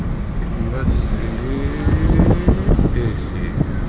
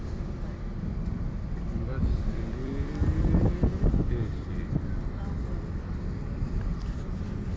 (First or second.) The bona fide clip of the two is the first